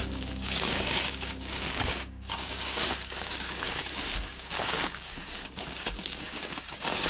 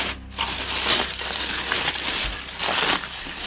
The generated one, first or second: first